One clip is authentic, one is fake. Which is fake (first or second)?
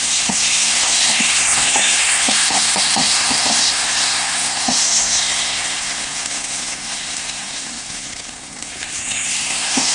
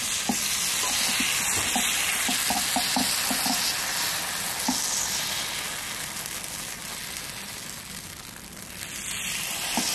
first